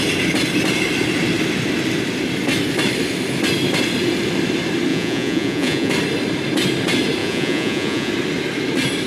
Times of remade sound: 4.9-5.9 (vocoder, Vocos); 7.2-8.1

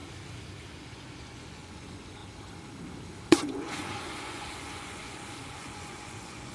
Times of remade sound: 0.7-2.2 (vocoder, Vocos); 3.3-6.5

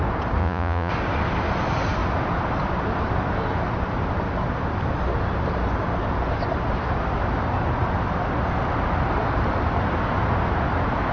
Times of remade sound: 0.4-0.9 (vocoder, Vocos)

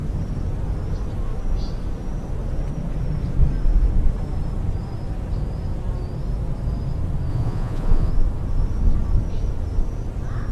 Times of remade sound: 7.3-8.1 (vocoder, Vocos)